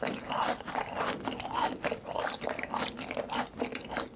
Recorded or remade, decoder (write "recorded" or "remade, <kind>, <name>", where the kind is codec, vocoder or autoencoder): remade, vocoder, BigVGAN v2